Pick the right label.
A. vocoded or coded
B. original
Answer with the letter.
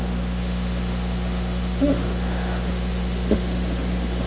A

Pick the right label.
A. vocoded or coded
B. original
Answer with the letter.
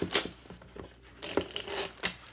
B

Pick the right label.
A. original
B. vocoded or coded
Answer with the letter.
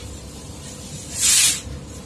A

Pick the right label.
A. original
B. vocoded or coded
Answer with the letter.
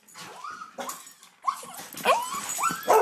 A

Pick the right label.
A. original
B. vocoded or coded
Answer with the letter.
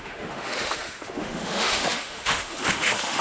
B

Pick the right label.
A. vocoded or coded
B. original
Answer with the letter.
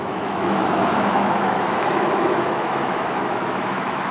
A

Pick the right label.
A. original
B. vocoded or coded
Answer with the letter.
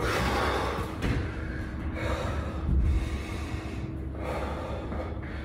A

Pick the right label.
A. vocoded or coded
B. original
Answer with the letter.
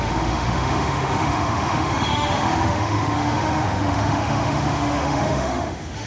A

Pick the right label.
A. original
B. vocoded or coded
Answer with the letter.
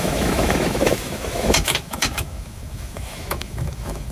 B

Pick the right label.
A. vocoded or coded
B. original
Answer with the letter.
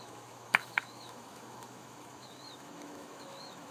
A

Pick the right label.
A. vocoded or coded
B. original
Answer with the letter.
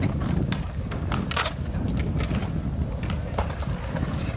B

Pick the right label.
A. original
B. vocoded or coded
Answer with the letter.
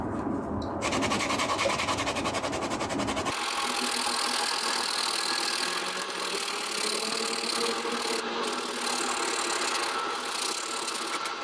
A